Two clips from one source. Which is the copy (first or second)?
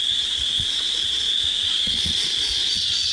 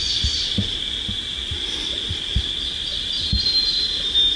first